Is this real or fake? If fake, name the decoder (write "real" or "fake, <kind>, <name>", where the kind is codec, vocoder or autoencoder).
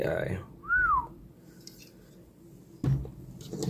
real